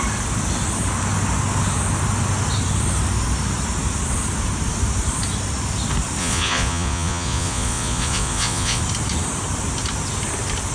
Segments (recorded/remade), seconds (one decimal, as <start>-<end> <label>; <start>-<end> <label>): 0.0-6.2 recorded; 6.2-8.8 remade; 8.8-10.7 recorded